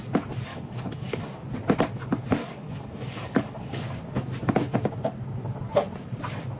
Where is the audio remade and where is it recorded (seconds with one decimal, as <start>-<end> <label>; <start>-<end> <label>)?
0.0-0.5 recorded; 0.5-1.2 remade; 1.2-2.4 recorded; 2.4-3.8 remade; 3.8-6.6 recorded

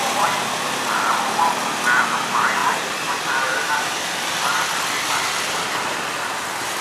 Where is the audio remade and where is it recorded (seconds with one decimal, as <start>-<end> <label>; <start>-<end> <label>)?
0.0-6.8 recorded

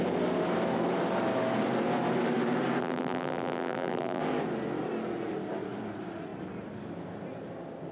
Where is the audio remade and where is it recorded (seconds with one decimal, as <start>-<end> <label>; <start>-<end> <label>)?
0.0-2.8 recorded; 2.8-4.2 remade; 4.2-7.9 recorded

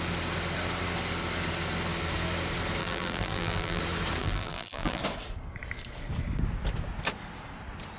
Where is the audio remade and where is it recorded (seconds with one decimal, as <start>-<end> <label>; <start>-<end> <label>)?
0.0-2.8 recorded; 2.8-3.8 remade; 3.8-4.2 recorded; 4.2-5.0 remade; 5.0-8.0 recorded

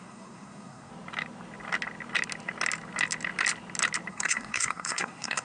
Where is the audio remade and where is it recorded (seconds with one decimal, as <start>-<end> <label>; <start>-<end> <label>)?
0.0-0.9 remade; 0.9-4.1 recorded; 4.1-5.4 remade

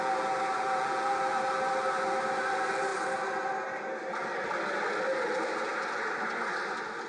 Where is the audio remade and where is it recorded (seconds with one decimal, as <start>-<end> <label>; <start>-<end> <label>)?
0.0-7.1 recorded

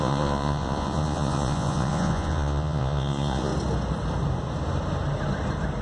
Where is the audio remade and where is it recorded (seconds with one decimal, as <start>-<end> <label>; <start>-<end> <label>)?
0.0-3.5 remade; 3.5-5.8 recorded